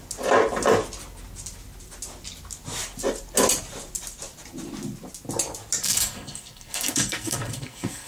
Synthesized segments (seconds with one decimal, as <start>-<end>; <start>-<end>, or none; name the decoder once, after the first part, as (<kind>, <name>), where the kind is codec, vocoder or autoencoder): 5.8-8.1 (codec, SNAC)